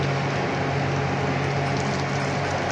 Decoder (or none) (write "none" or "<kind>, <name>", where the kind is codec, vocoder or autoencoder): none